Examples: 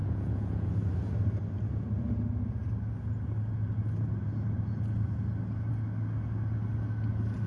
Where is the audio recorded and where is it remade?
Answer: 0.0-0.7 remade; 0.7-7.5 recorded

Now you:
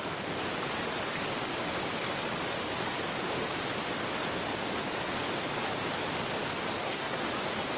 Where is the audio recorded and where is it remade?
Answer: 0.0-6.8 recorded; 6.8-7.3 remade; 7.3-7.8 recorded

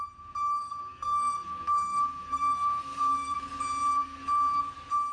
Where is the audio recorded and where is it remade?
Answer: 0.0-0.6 recorded; 0.6-3.4 remade; 3.4-3.9 recorded; 3.9-4.6 remade; 4.6-5.1 recorded

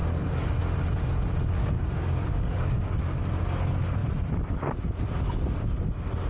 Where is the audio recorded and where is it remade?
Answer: 0.0-1.6 recorded; 1.6-3.2 remade; 3.2-6.3 recorded

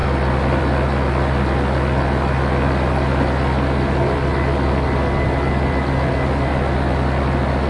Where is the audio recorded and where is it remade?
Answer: 0.0-7.7 recorded

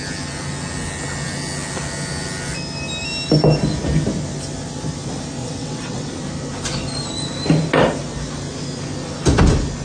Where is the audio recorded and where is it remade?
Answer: 0.0-5.4 recorded; 5.4-6.1 remade; 6.1-9.8 recorded